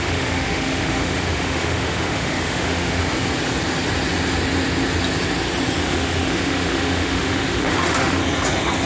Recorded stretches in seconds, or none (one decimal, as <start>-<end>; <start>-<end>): 3.0-5.8; 8.2-8.9